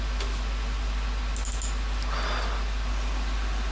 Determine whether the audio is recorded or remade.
recorded